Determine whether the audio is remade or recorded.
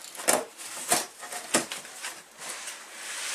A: recorded